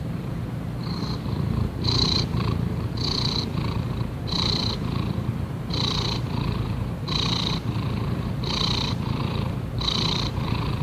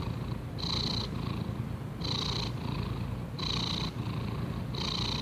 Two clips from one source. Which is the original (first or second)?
second